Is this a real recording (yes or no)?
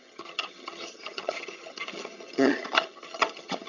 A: no